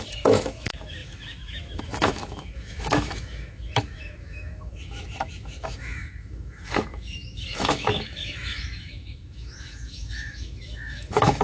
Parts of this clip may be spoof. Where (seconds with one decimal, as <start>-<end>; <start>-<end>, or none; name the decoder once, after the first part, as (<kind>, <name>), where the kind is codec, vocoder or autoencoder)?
0.0-11.4 (autoencoder, DAC-VAE)

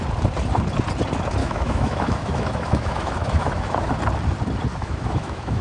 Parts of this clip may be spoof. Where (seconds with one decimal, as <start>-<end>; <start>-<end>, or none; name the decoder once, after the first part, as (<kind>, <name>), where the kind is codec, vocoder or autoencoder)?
1.4-3.9 (autoencoder, DAC-VAE); 4.7-5.6

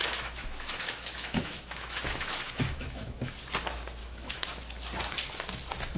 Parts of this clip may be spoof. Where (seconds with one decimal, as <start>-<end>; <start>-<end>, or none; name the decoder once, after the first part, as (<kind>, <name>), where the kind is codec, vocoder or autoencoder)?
0.0-3.3 (autoencoder, DAC-VAE); 4.0-4.6

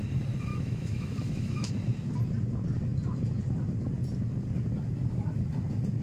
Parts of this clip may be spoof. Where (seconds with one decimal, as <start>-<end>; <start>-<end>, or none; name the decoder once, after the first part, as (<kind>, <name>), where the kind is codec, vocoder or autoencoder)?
0.5-1.7 (autoencoder, DAC-VAE)

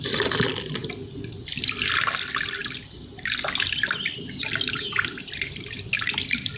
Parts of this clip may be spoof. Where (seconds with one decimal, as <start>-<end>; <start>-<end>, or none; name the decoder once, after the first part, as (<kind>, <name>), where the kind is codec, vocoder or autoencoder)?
none

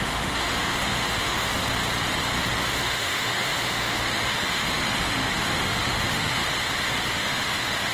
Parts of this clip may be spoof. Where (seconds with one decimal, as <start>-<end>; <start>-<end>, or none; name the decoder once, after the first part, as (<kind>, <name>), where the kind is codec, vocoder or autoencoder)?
0.0-1.6 (autoencoder, DAC-VAE); 2.7-6.4; 7.1-7.9